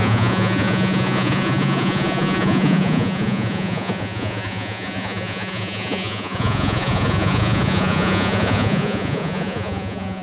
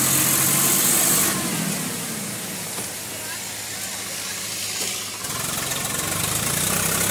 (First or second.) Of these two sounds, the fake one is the first